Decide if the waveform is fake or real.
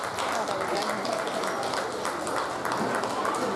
real